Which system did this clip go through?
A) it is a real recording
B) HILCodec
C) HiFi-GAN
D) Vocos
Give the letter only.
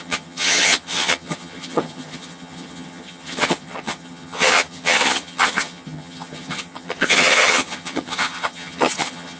C